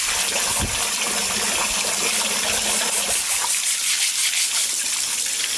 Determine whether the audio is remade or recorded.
recorded